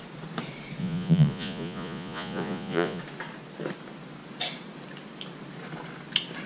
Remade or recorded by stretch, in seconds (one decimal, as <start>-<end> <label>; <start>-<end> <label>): 0.0-0.8 recorded; 0.8-3.0 remade; 3.0-6.5 recorded